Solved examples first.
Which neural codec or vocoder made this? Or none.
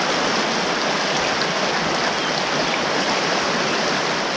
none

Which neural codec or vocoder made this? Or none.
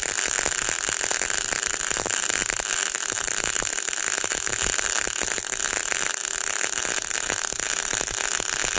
none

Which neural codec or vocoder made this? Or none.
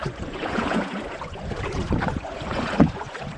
vocoder, Vocos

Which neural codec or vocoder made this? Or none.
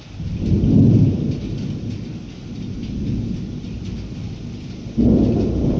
none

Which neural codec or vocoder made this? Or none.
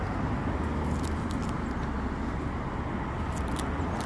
none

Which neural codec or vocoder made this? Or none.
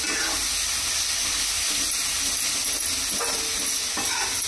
none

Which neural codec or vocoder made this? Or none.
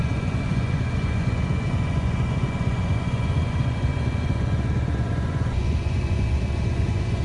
vocoder, Vocos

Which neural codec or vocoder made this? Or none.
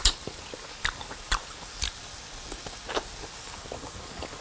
none